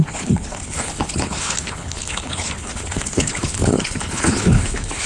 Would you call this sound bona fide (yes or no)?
no